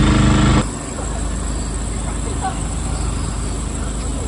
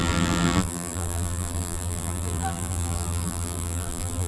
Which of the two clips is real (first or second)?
first